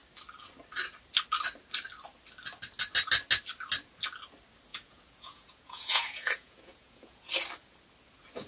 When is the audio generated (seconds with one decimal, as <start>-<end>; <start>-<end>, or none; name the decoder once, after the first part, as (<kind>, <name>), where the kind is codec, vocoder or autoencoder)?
4.7-7.3 (vocoder, Vocos)